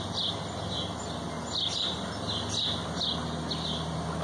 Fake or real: real